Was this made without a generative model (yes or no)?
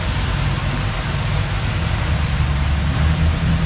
yes